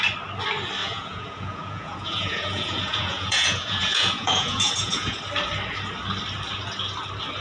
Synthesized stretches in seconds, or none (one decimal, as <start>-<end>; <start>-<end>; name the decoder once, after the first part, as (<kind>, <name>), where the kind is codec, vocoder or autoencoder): 0.8-5.2 (vocoder, Vocos)